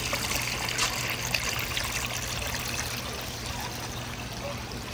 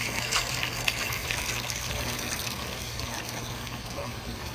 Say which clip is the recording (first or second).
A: first